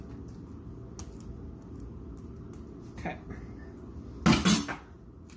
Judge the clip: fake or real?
real